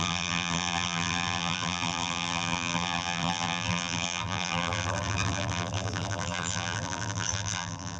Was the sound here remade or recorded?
remade